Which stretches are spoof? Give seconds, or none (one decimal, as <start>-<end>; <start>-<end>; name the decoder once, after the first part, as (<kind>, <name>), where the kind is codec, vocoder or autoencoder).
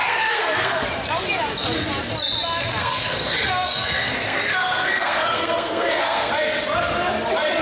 0.0-0.8 (codec, SNAC); 2.8-6.3